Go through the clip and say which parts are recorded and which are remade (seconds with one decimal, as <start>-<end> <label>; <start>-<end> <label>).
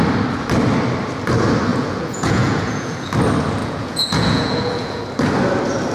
0.0-1.7 recorded; 1.7-3.1 remade; 3.1-3.6 recorded; 3.6-5.0 remade; 5.0-5.9 recorded